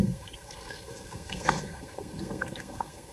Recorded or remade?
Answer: remade